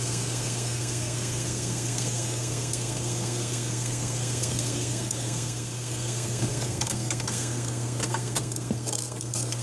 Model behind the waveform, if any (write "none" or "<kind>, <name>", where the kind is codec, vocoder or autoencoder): codec, SNAC